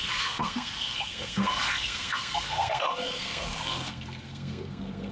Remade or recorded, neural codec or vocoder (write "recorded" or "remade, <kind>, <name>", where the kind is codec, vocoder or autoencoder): remade, codec, SNAC